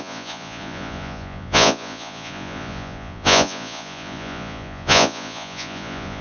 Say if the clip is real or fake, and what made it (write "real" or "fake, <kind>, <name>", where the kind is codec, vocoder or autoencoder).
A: fake, vocoder, Vocos